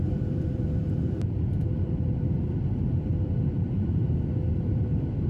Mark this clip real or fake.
fake